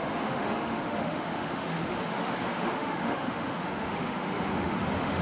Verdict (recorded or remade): remade